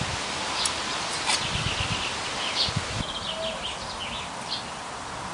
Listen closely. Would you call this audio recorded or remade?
recorded